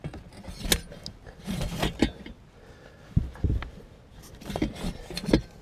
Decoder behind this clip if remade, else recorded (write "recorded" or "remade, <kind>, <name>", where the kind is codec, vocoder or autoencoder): recorded